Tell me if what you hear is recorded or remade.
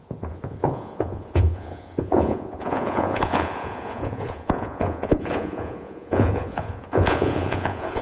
remade